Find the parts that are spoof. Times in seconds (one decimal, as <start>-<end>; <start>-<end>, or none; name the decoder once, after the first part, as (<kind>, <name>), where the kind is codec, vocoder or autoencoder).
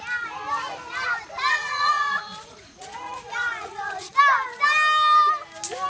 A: 1.5-4.1 (vocoder, Vocos)